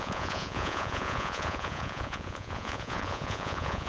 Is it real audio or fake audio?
fake